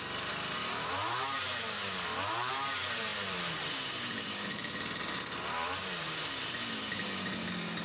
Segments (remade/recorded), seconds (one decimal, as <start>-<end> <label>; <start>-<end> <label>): 0.0-7.8 remade